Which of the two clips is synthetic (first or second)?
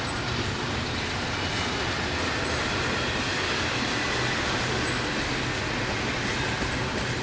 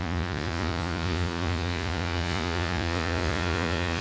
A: second